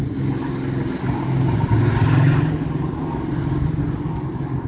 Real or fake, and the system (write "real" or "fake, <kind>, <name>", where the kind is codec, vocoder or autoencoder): real